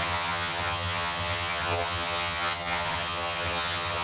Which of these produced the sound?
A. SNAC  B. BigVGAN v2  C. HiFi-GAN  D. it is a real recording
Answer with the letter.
C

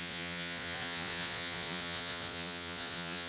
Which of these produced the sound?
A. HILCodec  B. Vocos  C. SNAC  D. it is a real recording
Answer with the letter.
B